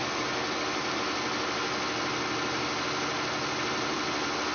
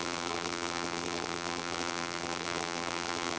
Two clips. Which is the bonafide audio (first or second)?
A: first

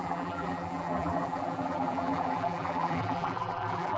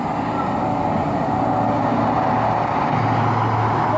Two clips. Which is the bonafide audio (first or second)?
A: second